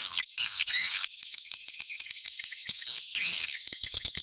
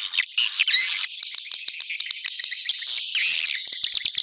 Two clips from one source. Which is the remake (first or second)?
first